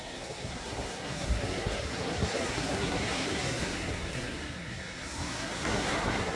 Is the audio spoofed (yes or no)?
yes